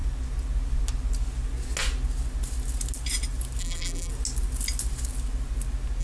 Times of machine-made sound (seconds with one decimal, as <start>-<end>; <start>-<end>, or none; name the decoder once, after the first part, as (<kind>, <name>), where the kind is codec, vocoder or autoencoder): 3.6-4.1 (vocoder, BigVGAN v2)